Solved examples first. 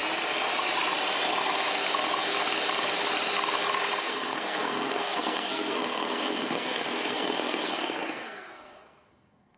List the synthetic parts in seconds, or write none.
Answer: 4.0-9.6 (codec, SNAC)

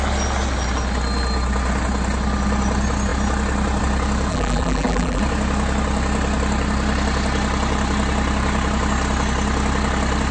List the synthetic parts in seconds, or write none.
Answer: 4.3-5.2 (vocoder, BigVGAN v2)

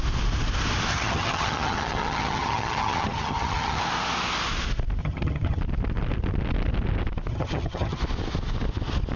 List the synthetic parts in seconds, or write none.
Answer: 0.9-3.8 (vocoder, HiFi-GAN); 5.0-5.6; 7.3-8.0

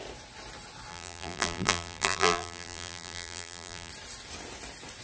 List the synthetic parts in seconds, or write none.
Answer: 0.9-3.9 (vocoder, BigVGAN v2)

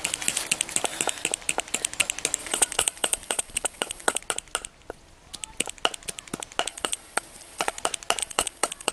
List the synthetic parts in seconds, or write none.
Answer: 2.4-4.2 (vocoder, Vocos); 6.7-7.8; 8.2-8.9

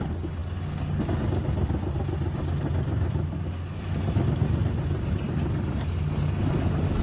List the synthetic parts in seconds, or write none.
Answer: 4.4-6.0 (vocoder, BigVGAN v2)

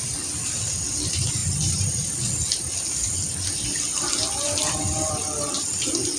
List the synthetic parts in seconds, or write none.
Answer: none

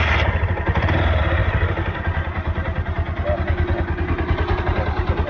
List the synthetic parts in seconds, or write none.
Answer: 0.0-1.4 (vocoder, BigVGAN v2); 4.6-5.3